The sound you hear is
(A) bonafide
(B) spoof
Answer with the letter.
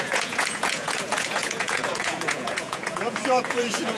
B